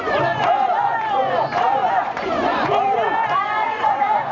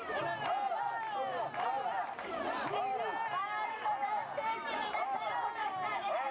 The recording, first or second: second